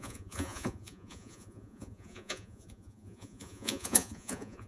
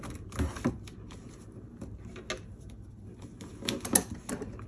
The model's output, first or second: first